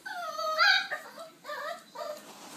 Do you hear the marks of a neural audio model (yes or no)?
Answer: no